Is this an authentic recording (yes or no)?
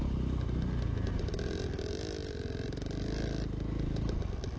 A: yes